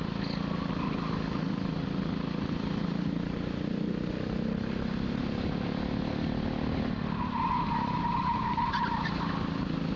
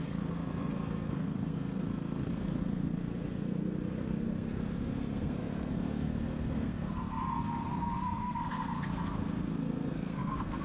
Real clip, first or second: first